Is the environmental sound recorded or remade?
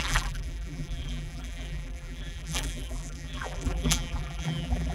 remade